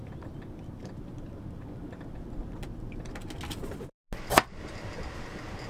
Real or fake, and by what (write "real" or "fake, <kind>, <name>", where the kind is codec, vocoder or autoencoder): real